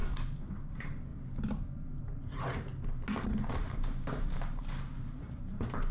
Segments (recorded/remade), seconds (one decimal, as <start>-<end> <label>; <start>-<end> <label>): 0.0-1.1 remade; 1.1-2.0 recorded; 2.0-2.7 remade; 2.7-3.5 recorded; 3.5-5.9 remade